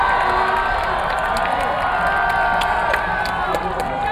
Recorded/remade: recorded